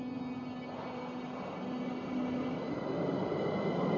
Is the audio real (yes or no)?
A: yes